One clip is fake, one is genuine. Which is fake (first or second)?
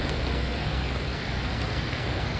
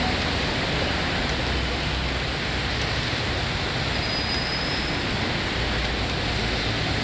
first